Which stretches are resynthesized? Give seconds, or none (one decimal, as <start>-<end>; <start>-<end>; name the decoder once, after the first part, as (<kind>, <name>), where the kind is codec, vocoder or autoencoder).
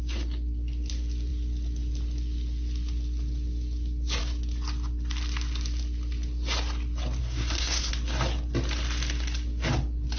7.2-7.9 (codec, SNAC)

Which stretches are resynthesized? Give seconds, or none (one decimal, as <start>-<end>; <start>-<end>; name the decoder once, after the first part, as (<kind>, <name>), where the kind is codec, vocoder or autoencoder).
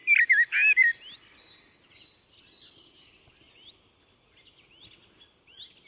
none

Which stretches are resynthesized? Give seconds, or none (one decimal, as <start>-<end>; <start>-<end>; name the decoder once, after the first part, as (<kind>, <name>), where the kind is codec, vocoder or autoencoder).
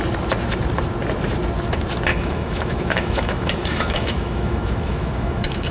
2.1-5.7 (autoencoder, DAC-VAE)